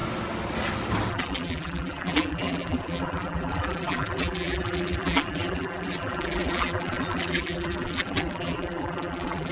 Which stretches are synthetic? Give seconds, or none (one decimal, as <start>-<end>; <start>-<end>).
1.1-9.5